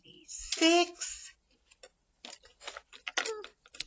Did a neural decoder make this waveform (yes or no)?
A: no